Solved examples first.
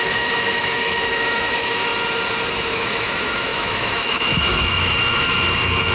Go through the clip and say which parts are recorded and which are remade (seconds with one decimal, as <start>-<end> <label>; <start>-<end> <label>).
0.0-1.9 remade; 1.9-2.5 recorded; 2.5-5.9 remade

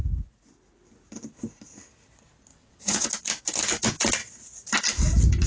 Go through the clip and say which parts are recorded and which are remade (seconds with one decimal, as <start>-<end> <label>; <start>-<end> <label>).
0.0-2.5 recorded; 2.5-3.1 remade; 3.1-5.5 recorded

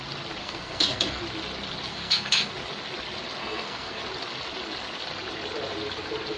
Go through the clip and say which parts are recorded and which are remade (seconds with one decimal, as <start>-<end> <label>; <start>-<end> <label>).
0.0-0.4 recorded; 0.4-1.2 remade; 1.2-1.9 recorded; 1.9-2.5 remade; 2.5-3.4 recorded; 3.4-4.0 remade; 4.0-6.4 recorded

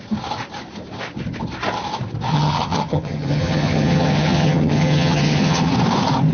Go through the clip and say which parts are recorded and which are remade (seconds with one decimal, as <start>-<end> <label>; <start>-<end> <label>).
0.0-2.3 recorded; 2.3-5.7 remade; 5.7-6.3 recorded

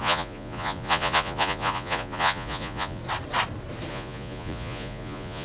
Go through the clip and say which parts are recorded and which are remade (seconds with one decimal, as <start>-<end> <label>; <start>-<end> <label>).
0.0-3.0 remade; 3.0-3.9 recorded; 3.9-5.4 remade

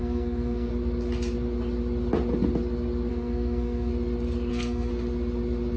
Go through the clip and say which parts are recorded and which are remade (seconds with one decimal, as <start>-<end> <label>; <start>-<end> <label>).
0.0-0.7 remade; 0.7-3.1 recorded; 3.1-3.9 remade; 3.9-4.5 recorded; 4.5-4.9 remade; 4.9-5.8 recorded

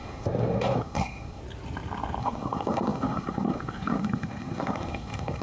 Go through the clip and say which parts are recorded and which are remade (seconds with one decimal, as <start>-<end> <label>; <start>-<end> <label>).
0.0-1.4 remade; 1.4-2.2 recorded; 2.2-5.4 remade